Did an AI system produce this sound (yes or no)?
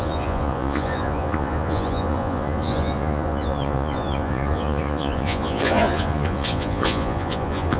yes